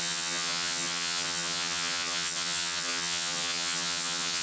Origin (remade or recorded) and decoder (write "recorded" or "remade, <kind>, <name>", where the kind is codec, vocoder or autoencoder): remade, vocoder, HiFi-GAN